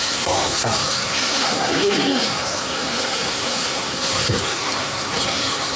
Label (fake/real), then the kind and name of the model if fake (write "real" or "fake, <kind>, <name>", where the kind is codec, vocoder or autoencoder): fake, codec, SNAC